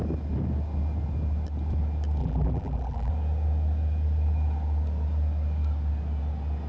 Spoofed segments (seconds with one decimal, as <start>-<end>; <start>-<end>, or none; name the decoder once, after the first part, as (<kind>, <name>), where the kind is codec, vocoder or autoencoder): 2.2-3.1 (vocoder, BigVGAN v2)